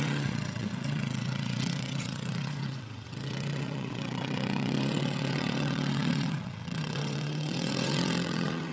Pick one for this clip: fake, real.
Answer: fake